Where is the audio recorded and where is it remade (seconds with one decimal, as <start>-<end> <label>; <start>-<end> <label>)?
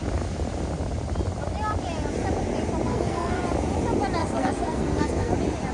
0.0-2.9 recorded; 2.9-3.4 remade; 3.4-4.2 recorded; 4.2-5.3 remade; 5.3-5.7 recorded